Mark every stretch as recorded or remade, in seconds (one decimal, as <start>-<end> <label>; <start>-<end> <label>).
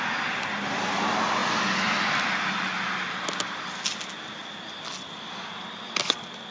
0.0-6.5 recorded